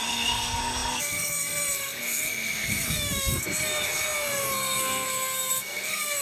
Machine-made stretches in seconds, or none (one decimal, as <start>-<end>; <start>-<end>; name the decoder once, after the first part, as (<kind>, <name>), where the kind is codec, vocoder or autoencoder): 0.0-6.2 (codec, SNAC)